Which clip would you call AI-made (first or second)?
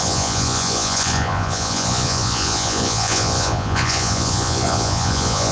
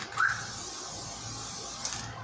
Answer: first